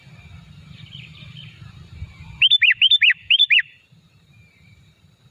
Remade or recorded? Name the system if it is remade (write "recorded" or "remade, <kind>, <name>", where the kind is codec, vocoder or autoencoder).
remade, vocoder, BigVGAN v2